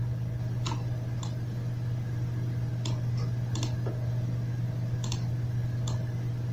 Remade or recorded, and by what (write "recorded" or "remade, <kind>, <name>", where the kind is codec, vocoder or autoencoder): recorded